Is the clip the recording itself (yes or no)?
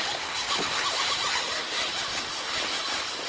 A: yes